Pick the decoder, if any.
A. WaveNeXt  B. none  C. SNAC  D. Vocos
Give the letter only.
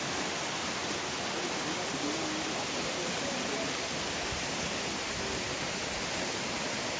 B